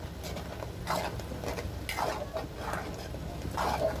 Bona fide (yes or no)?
yes